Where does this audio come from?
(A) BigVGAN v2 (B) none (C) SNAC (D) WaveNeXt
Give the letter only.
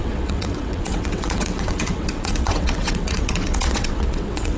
D